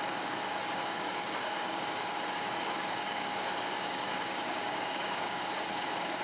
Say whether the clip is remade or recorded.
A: remade